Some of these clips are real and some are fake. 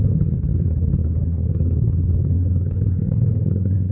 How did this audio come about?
fake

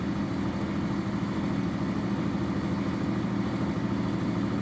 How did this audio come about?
real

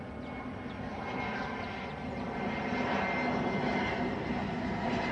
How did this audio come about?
real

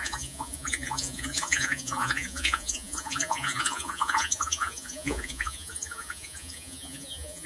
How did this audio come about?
fake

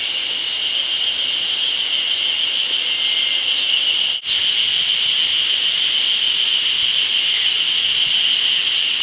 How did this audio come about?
real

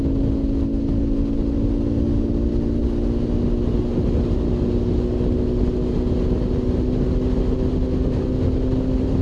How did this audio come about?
real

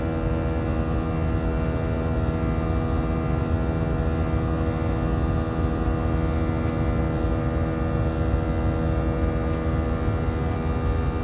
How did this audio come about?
real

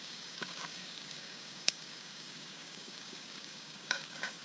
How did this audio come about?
fake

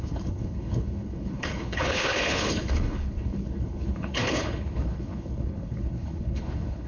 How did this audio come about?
fake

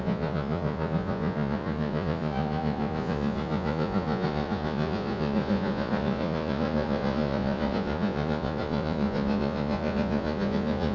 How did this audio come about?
fake